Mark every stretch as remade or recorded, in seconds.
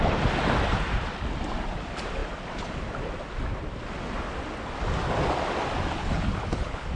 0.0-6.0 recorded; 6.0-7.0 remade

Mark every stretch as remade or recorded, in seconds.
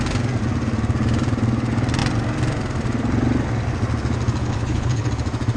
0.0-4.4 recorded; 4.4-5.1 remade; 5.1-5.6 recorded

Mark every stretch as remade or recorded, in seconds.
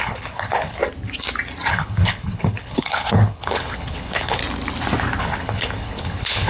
0.0-0.8 remade; 0.8-1.7 recorded; 1.7-4.4 remade; 4.4-5.2 recorded; 5.2-6.5 remade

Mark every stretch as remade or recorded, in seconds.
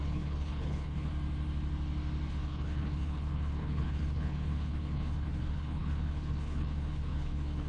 0.0-1.1 remade; 1.1-2.3 recorded; 2.3-7.7 remade